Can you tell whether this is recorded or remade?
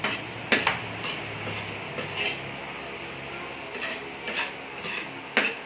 recorded